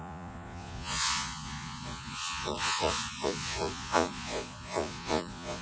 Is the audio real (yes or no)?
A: no